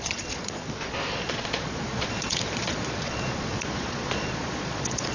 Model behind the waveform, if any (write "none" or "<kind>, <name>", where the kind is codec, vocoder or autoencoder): vocoder, Vocos